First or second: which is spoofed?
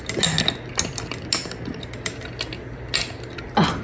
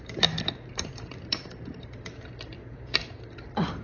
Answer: second